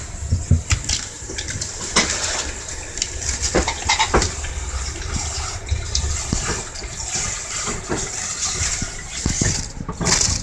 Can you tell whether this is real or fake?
real